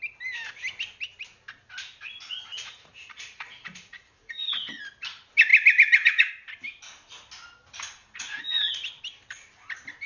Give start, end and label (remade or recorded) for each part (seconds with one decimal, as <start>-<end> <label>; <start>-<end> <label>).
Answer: 0.0-2.5 recorded; 2.5-4.8 remade; 4.8-8.0 recorded; 8.0-9.0 remade; 9.0-10.1 recorded